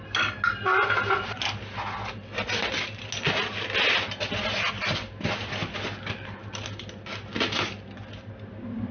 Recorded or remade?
recorded